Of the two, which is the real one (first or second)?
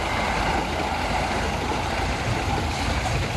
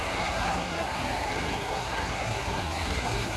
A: first